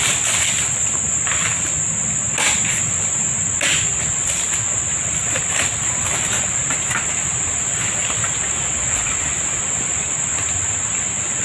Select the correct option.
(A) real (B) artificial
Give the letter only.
A